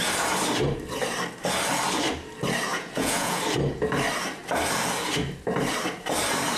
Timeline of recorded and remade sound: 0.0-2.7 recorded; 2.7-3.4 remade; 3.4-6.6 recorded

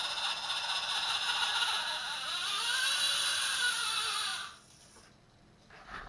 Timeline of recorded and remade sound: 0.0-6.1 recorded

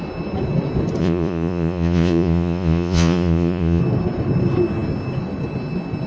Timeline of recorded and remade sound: 0.0-1.0 recorded; 1.0-3.8 remade; 3.8-6.1 recorded

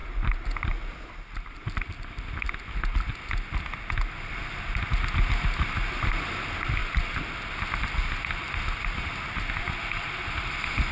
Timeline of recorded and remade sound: 0.0-10.9 recorded

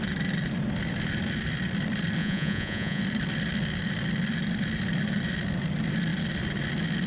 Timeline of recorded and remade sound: 0.0-2.2 recorded; 2.2-3.0 remade; 3.0-7.1 recorded

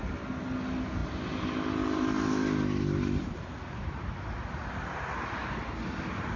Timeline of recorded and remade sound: 0.0-6.4 recorded

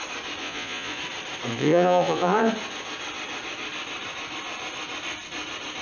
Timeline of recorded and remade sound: 0.0-0.4 recorded; 0.4-1.0 remade; 1.0-1.5 recorded; 1.5-2.5 remade; 2.5-5.8 recorded

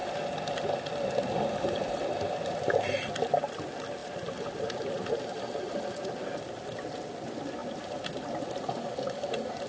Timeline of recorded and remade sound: 0.0-9.7 recorded